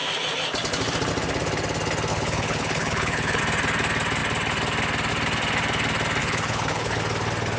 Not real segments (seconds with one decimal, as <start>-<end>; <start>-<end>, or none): 2.1-3.4; 6.2-7.0